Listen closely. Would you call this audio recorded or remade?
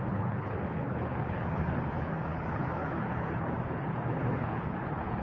remade